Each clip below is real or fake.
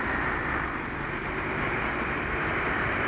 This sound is real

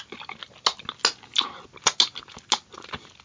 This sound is real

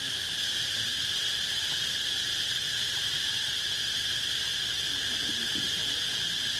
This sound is real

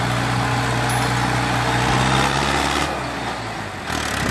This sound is real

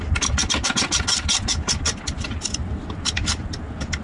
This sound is real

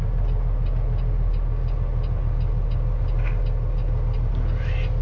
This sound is real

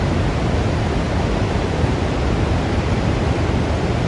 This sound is real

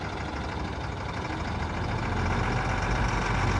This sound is real